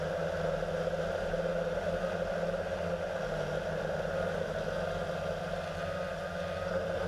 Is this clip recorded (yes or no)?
yes